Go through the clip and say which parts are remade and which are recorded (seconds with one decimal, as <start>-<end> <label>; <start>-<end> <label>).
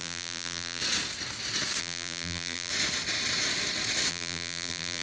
0.0-0.8 remade; 0.8-1.8 recorded; 1.8-2.7 remade; 2.7-4.1 recorded; 4.1-5.0 remade